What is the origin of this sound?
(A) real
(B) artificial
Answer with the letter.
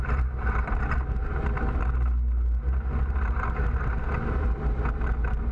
A